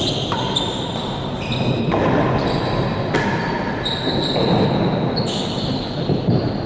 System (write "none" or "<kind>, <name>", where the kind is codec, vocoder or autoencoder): none